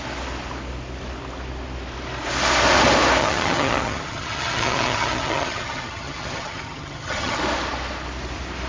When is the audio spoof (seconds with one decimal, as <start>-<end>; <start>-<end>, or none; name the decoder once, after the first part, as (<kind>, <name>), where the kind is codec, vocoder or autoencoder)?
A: 3.2-7.4 (vocoder, HiFi-GAN)